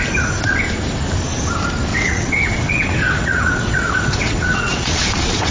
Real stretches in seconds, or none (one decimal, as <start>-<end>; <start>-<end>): 0.0-1.9

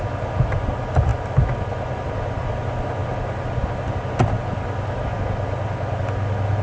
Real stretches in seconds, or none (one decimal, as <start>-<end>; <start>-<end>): 0.0-6.6

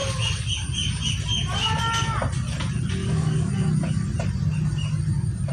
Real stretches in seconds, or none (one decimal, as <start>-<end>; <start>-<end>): 0.0-3.0; 3.5-5.5

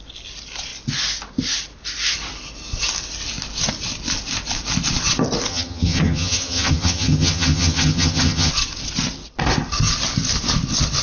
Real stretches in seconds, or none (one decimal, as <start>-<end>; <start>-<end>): 0.0-5.5; 8.5-11.0